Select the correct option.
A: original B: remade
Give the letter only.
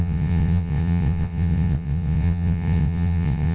B